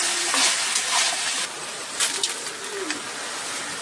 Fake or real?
real